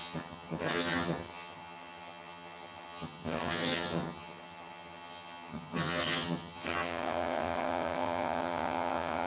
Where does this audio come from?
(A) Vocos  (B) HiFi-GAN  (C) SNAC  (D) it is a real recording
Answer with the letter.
B